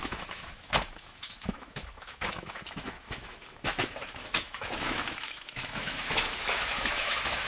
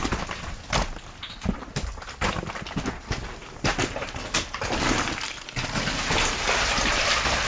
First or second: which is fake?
first